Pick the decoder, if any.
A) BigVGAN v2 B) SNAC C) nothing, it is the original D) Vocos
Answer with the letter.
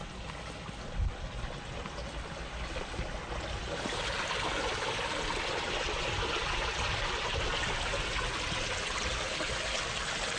C